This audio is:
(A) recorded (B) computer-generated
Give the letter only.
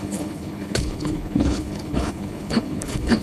B